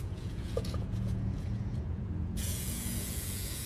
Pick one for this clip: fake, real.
fake